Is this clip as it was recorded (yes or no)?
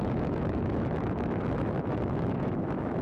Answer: no